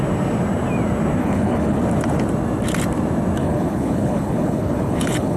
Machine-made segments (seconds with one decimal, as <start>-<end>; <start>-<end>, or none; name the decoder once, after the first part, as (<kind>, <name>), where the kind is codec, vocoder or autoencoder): 1.2-1.8 (codec, HILCodec); 3.4-5.4